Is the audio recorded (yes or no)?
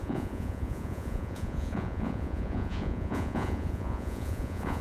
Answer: no